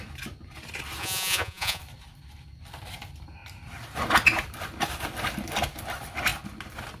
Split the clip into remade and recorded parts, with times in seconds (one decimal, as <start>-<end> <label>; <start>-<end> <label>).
0.0-1.0 recorded; 1.0-1.8 remade; 1.8-7.0 recorded